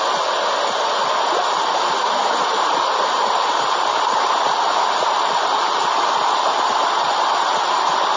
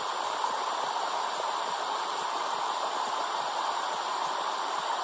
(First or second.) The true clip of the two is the first